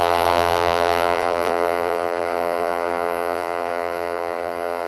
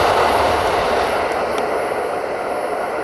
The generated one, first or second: first